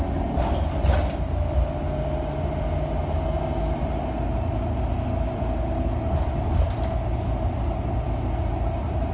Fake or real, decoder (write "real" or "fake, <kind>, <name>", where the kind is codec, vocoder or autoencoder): real